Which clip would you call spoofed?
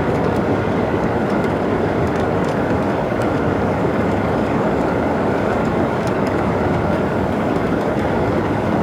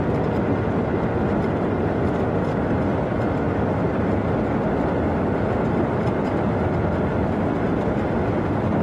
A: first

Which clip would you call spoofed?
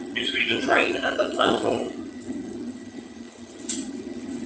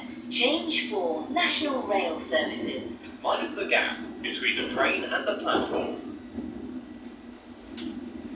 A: first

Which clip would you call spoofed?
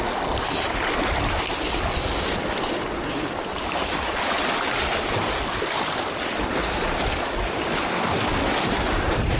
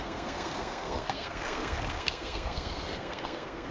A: second